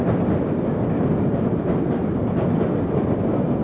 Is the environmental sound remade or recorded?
recorded